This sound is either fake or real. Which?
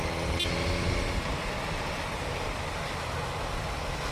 real